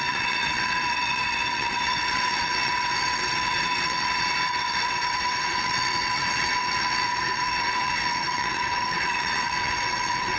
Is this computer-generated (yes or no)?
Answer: yes